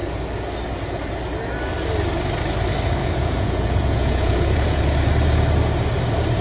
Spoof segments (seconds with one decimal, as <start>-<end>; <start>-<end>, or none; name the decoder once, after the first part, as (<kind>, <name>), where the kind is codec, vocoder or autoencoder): 3.0-4.8 (vocoder, Vocos)